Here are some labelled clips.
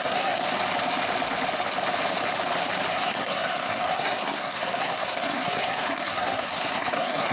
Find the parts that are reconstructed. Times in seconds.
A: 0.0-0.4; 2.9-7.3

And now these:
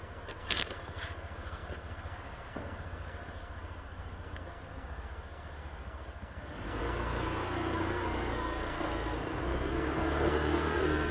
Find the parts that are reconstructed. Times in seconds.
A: 0.0-11.1